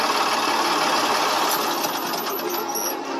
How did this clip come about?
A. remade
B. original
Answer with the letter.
B